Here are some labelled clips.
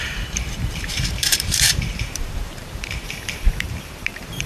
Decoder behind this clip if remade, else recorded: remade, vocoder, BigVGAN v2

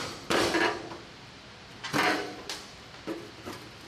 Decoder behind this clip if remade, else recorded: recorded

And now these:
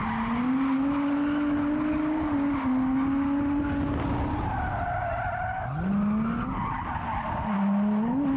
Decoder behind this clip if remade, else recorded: recorded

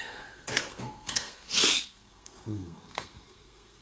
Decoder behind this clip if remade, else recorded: remade, codec, SNAC